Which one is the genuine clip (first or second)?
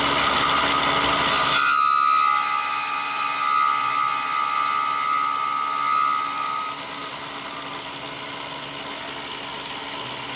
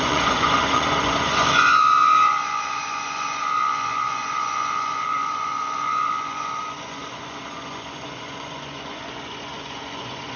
first